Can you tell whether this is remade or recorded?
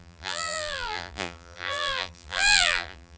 remade